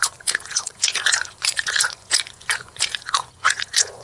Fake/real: fake